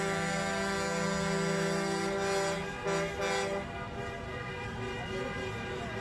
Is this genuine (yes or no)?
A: yes